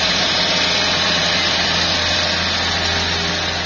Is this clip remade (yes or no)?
no